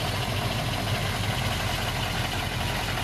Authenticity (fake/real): real